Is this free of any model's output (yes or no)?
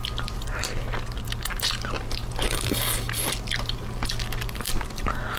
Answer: yes